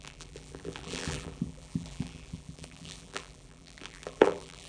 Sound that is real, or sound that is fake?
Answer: fake